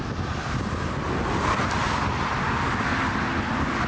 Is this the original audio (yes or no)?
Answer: yes